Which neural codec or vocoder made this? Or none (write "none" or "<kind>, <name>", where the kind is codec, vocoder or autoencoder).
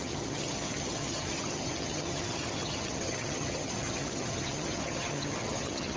vocoder, HiFi-GAN